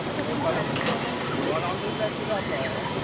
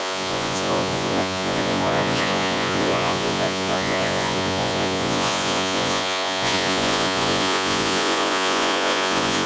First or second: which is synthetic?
second